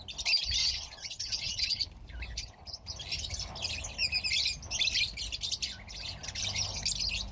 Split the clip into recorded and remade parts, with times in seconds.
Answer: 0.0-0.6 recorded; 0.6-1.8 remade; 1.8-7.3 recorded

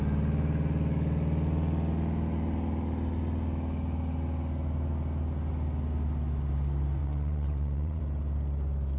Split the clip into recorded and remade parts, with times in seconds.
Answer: 0.0-7.0 recorded; 7.0-8.0 remade; 8.0-9.0 recorded